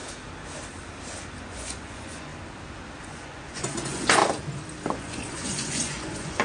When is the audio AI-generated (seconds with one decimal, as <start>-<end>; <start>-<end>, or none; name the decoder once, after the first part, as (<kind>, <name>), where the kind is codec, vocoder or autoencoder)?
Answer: 1.4-2.3 (vocoder, Vocos); 3.0-4.2; 4.9-6.4